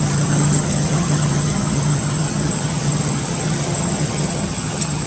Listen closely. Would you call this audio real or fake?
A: fake